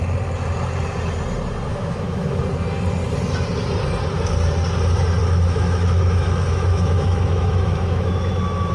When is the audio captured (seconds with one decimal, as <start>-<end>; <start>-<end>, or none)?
0.0-1.7; 2.4-5.2